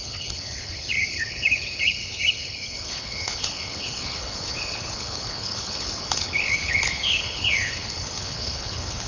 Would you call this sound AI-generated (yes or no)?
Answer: yes